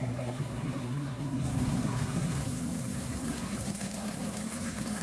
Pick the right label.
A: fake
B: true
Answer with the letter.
A